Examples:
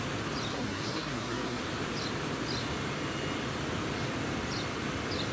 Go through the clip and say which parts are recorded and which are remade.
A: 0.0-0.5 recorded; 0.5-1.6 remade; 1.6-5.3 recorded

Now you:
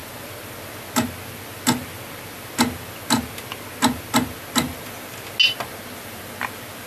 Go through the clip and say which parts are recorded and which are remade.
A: 0.0-6.9 recorded